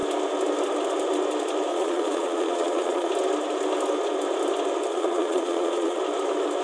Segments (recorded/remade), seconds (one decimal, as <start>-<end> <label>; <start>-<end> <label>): 0.0-1.7 recorded; 1.7-3.1 remade; 3.1-4.9 recorded; 4.9-6.0 remade; 6.0-6.6 recorded